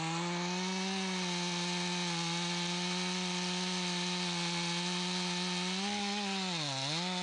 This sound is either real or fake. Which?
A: real